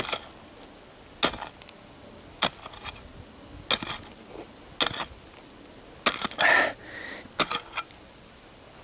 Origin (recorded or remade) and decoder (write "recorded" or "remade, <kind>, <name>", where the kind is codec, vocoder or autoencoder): recorded